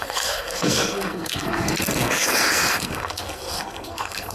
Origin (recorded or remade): remade